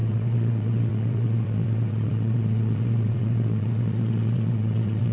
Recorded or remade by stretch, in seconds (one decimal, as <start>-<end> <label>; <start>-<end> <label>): 0.0-5.1 remade